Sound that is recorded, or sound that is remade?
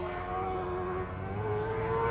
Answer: recorded